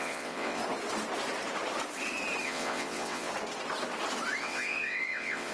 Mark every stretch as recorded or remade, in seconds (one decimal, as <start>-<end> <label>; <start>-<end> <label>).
0.0-0.6 remade; 0.6-2.4 recorded; 2.4-3.3 remade; 3.3-4.4 recorded; 4.4-5.5 remade